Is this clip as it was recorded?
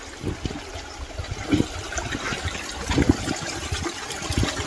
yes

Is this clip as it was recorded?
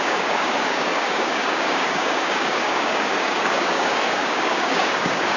no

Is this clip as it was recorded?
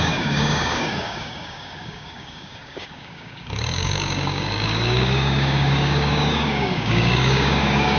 no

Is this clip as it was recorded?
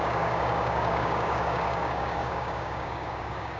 no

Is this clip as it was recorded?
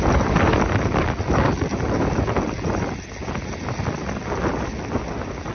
yes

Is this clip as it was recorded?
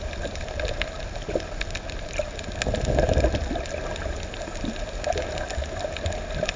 yes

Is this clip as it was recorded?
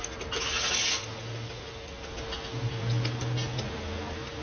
yes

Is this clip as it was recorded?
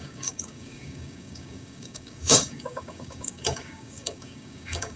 no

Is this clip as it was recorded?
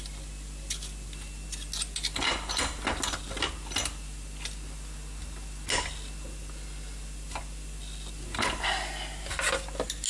yes